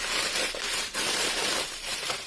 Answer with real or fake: fake